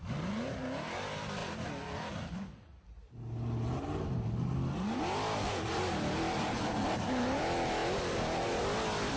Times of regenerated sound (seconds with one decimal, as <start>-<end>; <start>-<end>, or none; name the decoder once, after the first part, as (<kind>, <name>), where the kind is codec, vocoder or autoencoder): none